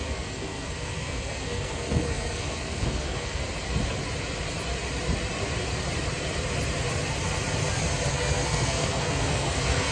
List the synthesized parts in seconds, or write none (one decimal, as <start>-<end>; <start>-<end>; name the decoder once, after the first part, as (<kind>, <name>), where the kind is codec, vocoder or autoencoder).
0.0-3.4 (codec, SNAC); 8.1-9.9